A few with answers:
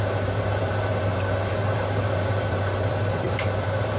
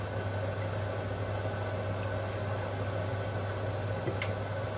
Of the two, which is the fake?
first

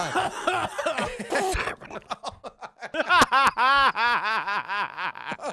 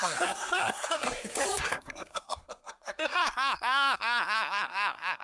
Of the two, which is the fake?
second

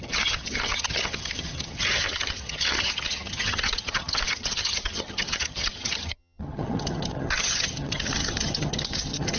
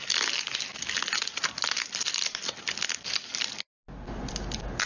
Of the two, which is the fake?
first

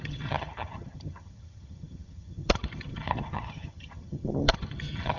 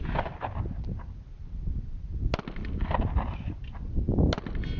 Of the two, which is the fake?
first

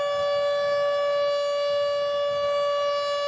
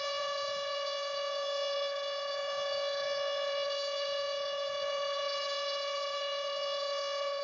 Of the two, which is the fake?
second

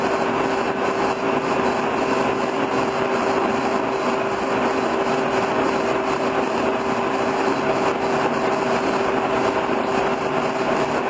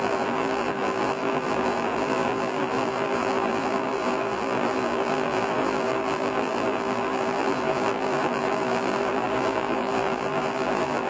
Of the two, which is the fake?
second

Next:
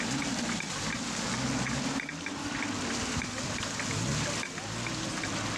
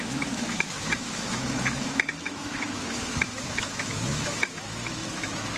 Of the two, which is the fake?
second